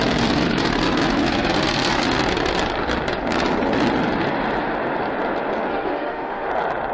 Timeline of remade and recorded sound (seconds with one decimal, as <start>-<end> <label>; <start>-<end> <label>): 0.0-5.7 recorded; 5.7-6.5 remade; 6.5-6.9 recorded